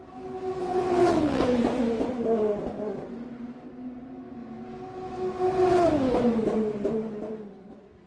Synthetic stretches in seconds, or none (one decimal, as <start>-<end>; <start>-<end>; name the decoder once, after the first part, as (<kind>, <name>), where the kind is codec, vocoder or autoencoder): 0.6-1.4 (vocoder, WaveNeXt)